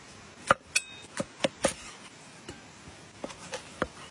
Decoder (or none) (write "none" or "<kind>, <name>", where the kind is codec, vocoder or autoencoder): none